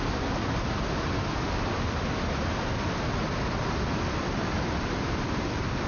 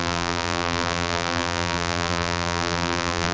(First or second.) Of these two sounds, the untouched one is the first